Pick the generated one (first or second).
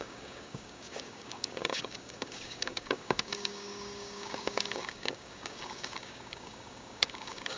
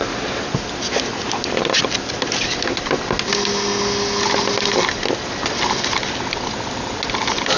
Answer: first